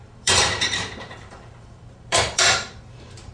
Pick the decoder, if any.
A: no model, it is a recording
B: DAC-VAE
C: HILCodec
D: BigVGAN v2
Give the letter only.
D